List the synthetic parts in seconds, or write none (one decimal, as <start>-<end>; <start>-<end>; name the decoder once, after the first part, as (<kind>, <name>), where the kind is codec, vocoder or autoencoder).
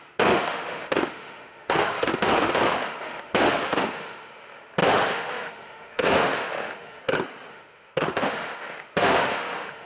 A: 0.0-7.0 (autoencoder, DAC-VAE); 7.5-9.9